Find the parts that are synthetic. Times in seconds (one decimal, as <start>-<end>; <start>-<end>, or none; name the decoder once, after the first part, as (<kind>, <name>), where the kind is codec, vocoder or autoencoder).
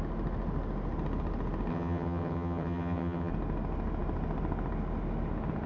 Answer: 1.7-3.3 (vocoder, HiFi-GAN)